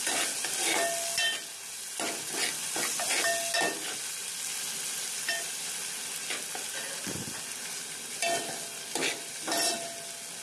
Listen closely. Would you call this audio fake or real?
real